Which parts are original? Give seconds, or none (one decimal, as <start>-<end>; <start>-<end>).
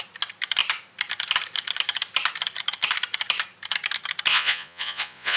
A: 0.0-4.3